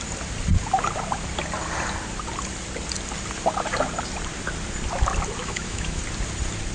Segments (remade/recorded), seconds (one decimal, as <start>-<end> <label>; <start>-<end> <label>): 0.0-5.4 recorded; 5.4-6.0 remade; 6.0-6.7 recorded